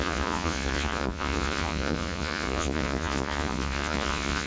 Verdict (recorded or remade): remade